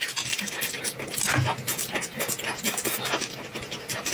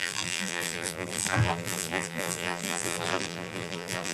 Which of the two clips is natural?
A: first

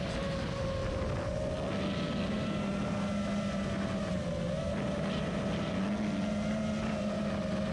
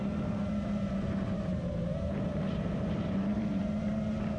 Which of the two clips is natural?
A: first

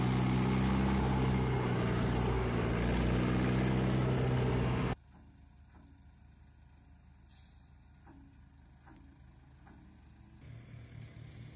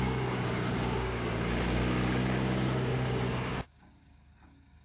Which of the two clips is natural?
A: first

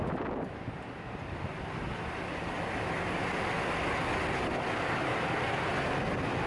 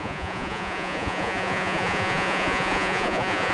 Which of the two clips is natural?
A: first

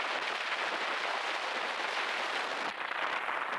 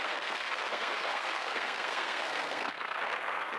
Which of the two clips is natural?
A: first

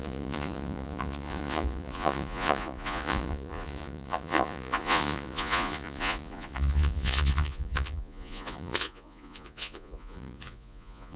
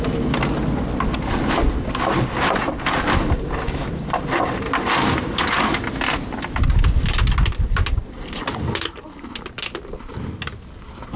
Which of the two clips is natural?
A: second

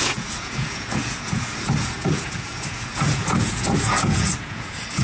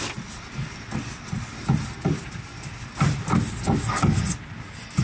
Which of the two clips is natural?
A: second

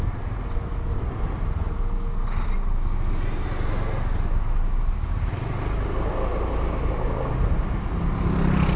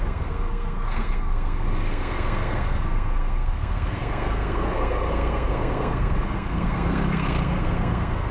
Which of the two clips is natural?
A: first